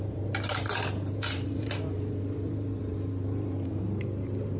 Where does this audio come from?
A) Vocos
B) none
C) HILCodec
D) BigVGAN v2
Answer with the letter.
D